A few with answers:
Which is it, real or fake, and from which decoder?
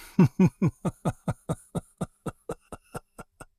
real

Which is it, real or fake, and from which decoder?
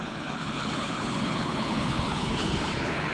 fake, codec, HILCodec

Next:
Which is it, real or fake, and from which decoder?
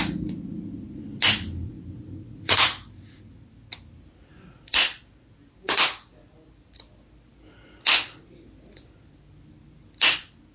real